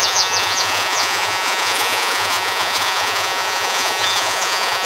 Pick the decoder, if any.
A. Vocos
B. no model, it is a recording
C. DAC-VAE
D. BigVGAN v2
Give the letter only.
A